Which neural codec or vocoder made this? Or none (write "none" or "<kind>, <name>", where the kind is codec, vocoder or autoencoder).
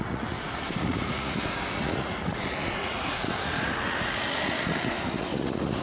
vocoder, Vocos